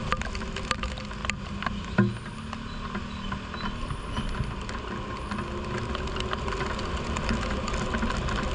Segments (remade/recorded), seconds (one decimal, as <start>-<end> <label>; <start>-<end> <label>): 0.0-8.5 recorded